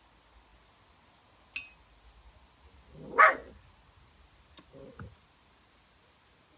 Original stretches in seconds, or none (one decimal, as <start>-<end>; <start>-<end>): 0.0-6.6